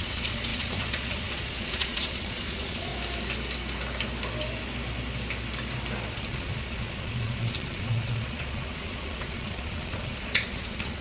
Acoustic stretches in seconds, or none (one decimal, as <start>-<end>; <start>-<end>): 2.9-6.1